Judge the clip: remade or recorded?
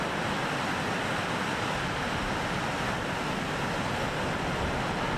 recorded